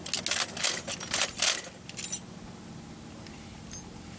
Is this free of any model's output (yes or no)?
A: yes